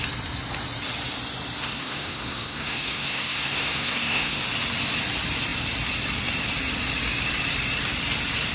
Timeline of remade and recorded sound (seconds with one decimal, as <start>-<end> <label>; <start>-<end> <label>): 0.0-1.6 recorded; 1.6-4.4 remade; 4.4-8.5 recorded